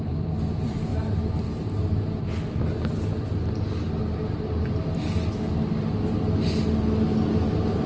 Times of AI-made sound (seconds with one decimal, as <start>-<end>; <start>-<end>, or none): none